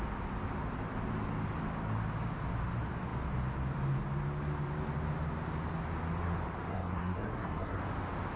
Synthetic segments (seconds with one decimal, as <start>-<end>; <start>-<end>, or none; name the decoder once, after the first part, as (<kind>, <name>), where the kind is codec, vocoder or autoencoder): 6.7-7.8 (codec, SNAC)